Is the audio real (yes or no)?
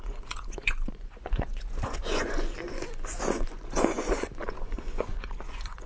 no